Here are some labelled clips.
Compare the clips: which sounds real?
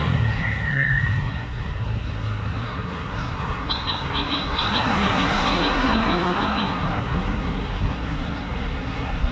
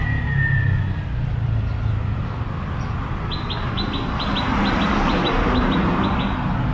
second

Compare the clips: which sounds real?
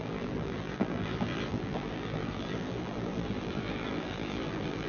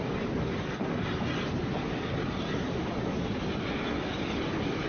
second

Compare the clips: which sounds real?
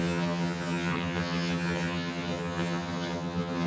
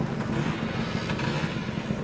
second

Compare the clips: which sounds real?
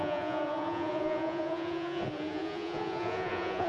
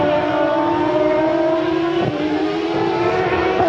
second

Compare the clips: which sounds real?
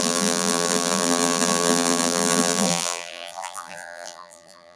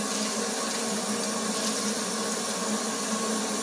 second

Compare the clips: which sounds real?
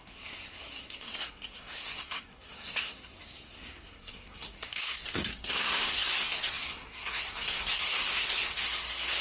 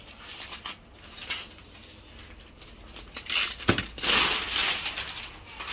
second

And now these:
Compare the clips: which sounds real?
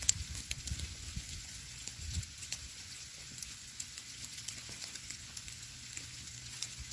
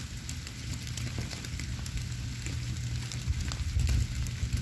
second